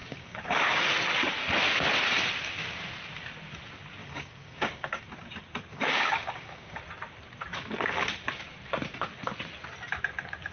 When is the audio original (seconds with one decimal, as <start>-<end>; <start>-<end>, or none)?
0.8-4.0; 5.0-5.7; 6.8-10.5